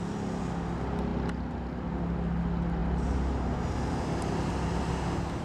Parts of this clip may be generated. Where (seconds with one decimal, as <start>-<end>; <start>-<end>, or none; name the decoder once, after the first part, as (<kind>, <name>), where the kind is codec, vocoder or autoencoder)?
none